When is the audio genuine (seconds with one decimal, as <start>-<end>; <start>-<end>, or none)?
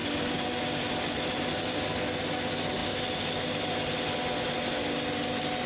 0.0-5.7